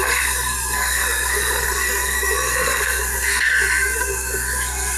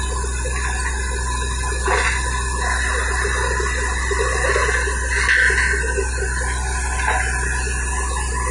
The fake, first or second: first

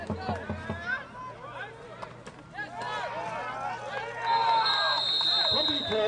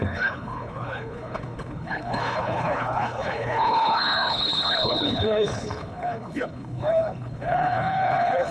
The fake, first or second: second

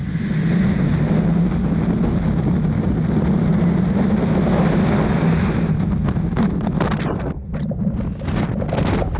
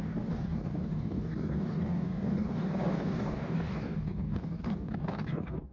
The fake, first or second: second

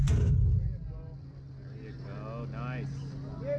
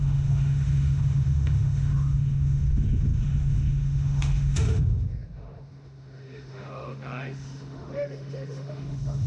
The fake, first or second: second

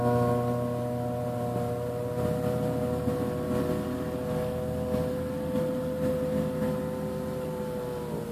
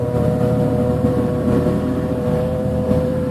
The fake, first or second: second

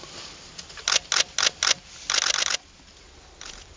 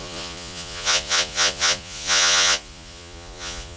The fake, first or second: second